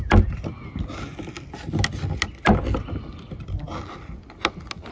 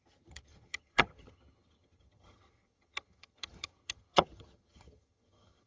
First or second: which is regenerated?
second